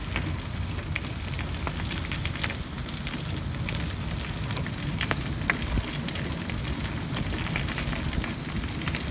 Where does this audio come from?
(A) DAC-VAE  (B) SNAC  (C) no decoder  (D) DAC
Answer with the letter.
C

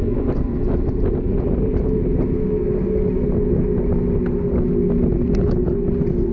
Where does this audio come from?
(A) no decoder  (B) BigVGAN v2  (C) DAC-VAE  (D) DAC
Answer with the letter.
A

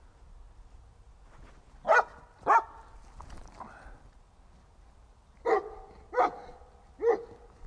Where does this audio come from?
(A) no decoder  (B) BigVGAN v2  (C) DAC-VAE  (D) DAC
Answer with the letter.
A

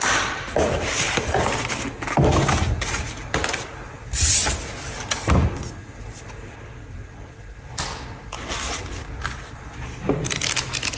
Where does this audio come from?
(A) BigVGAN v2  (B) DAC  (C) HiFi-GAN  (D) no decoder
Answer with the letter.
D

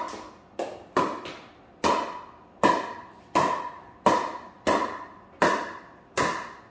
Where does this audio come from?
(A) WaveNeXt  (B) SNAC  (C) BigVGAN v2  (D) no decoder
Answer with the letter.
D